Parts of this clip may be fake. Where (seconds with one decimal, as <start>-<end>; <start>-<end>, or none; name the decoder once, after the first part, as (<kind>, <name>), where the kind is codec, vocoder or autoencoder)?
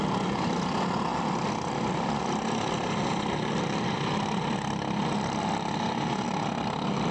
none